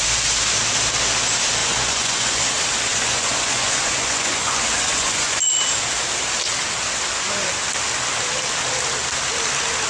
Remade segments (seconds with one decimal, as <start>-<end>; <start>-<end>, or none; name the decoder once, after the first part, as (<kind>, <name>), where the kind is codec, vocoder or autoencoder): 1.6-2.4 (vocoder, Vocos); 2.9-5.4